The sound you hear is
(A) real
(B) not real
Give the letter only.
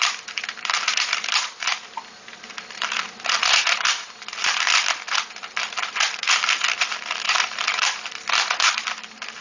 B